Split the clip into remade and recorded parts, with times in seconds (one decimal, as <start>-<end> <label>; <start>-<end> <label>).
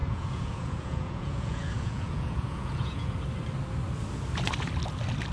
0.0-3.2 remade; 3.2-5.3 recorded